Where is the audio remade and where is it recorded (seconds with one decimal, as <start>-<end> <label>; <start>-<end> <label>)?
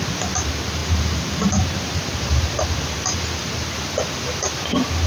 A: 0.0-0.8 recorded; 0.8-3.9 remade; 3.9-5.1 recorded